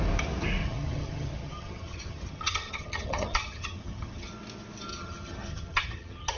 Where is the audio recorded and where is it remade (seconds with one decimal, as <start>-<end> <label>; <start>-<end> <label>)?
0.0-0.6 recorded; 0.6-4.3 remade; 4.3-4.9 recorded; 4.9-6.4 remade